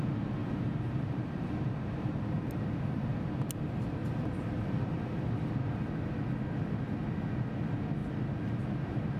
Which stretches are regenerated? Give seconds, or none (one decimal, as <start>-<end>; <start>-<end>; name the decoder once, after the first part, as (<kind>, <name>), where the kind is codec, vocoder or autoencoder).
0.4-2.6 (vocoder, BigVGAN v2); 4.0-5.2; 8.0-8.6